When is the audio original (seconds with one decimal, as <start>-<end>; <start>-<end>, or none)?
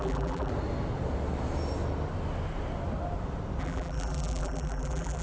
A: 0.5-3.6